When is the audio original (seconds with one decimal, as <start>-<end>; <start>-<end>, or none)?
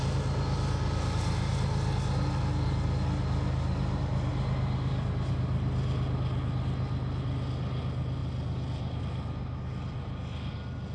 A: 0.0-10.9